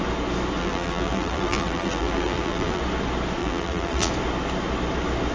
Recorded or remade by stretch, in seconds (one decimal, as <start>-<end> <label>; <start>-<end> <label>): 0.0-0.6 recorded; 0.6-2.8 remade; 2.8-3.4 recorded; 3.4-4.1 remade; 4.1-5.3 recorded